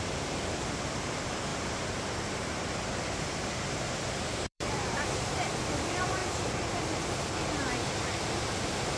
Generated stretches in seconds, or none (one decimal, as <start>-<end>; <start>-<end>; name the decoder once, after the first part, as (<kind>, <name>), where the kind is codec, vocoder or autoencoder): 0.0-1.5 (vocoder, BigVGAN v2); 2.6-6.2; 7.5-9.0